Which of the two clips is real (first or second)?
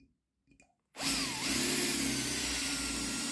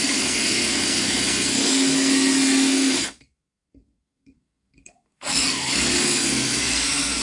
first